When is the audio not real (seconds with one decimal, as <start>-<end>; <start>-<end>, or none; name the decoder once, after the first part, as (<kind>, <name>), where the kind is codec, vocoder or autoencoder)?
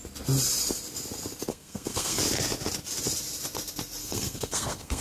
1.5-2.2 (codec, SNAC); 4.0-5.0